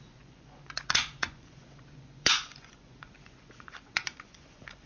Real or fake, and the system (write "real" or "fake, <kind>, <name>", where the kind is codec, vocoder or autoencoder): fake, vocoder, Vocos